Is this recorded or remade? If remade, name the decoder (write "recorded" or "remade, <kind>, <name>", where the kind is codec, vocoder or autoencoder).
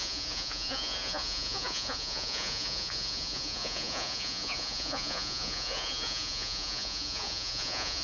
remade, vocoder, Vocos